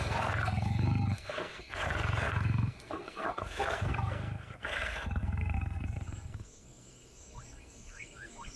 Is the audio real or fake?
fake